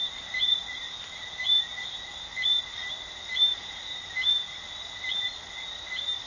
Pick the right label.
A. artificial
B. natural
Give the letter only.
A